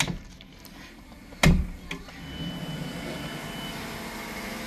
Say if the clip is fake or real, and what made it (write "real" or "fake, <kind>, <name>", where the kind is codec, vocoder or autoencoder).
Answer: real